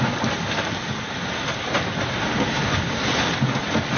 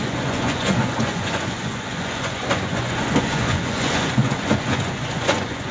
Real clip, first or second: first